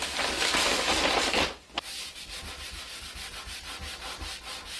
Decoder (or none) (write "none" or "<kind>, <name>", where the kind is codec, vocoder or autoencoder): none